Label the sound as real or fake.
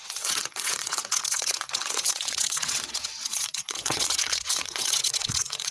fake